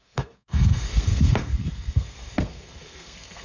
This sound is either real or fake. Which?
fake